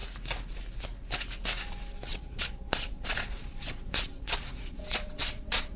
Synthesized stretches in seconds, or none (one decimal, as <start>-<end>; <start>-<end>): 2.1-5.8